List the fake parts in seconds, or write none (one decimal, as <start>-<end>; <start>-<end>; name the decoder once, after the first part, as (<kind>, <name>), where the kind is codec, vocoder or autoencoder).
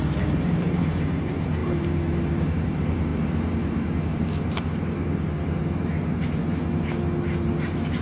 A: none